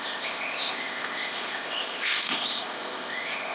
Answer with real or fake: fake